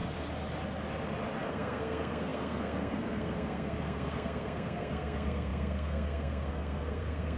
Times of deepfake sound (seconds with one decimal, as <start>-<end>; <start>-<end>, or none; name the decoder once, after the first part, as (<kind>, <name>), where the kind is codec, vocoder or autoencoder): 1.5-7.4 (codec, SNAC)